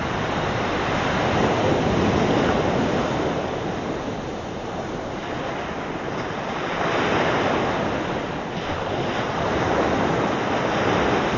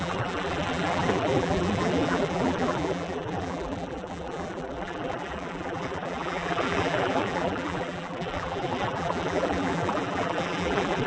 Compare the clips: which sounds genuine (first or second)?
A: first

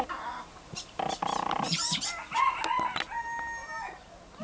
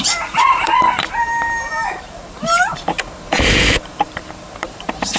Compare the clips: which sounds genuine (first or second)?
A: first